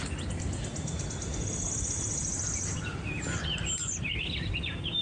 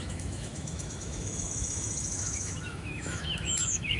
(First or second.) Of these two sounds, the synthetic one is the second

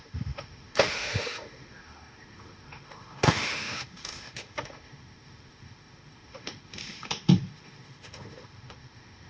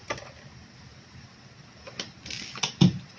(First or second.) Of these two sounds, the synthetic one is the first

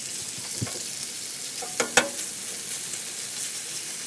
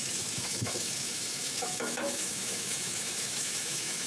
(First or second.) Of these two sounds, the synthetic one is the second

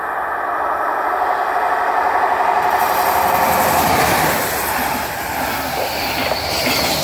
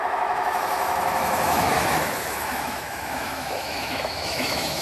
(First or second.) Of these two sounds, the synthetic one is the second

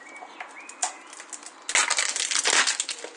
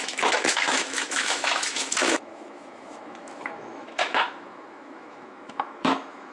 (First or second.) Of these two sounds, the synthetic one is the second